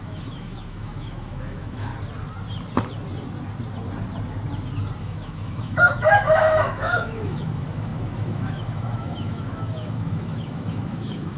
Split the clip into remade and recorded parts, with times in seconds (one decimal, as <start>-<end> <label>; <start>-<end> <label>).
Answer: 0.0-1.9 remade; 1.9-5.0 recorded; 5.0-11.4 remade

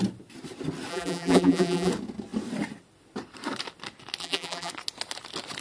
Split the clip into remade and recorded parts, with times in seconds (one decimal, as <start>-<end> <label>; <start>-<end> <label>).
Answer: 0.0-0.9 recorded; 0.9-1.9 remade; 1.9-4.2 recorded; 4.2-4.7 remade; 4.7-5.6 recorded

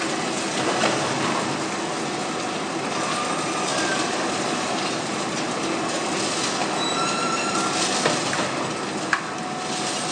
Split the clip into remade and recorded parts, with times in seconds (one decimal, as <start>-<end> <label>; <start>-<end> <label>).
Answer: 0.0-3.7 recorded; 3.7-4.5 remade; 4.5-6.6 recorded; 6.6-7.6 remade; 7.6-10.1 recorded

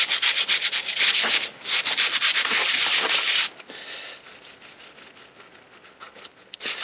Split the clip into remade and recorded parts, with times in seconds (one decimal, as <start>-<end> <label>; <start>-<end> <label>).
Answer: 0.0-2.3 recorded; 2.3-2.8 remade; 2.8-6.8 recorded

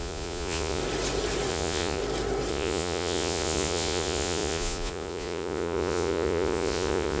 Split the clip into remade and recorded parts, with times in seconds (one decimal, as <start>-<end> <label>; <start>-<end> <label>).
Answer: 0.0-0.8 remade; 0.8-1.5 recorded; 1.5-2.0 remade; 2.0-2.5 recorded; 2.5-7.2 remade

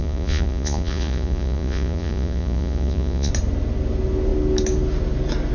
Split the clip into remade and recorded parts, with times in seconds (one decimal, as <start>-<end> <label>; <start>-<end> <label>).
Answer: 0.0-3.3 remade; 3.3-5.5 recorded

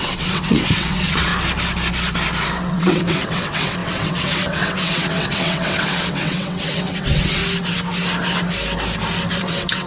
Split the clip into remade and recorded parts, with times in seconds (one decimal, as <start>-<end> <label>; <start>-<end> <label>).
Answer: 0.0-1.3 remade; 1.3-2.7 recorded; 2.7-7.4 remade; 7.4-9.4 recorded; 9.4-9.9 remade